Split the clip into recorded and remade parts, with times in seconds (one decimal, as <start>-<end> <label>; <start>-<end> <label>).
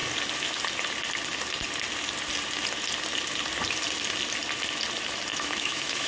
0.0-5.3 recorded; 5.3-6.1 remade